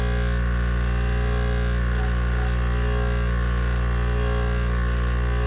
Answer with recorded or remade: recorded